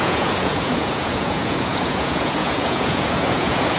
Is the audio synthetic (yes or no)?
yes